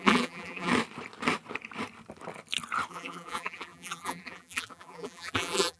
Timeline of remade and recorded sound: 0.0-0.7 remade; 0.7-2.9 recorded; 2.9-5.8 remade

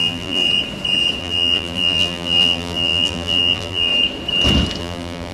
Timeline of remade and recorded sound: 0.0-0.4 remade; 0.4-1.2 recorded; 1.2-3.9 remade; 3.9-4.8 recorded; 4.8-5.3 remade

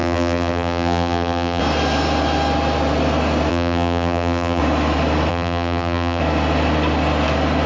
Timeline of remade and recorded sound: 0.0-1.6 remade; 1.6-3.5 recorded; 3.5-4.6 remade; 4.6-5.3 recorded; 5.3-6.2 remade; 6.2-7.7 recorded

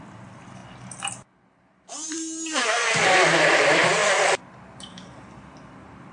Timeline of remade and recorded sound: 0.0-0.6 remade; 0.6-1.5 recorded; 1.5-4.0 remade; 4.0-5.4 recorded; 5.4-6.1 remade

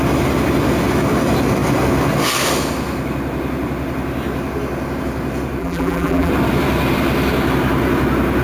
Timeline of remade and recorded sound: 0.0-5.6 recorded; 5.6-6.3 remade; 6.3-8.4 recorded

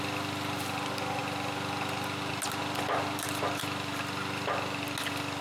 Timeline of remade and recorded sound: 0.0-5.4 recorded

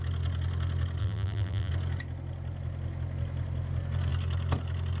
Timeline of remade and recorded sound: 0.0-1.0 recorded; 1.0-1.7 remade; 1.7-5.0 recorded

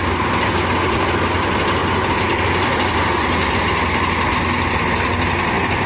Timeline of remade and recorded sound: 0.0-1.8 recorded; 1.8-4.3 remade; 4.3-5.9 recorded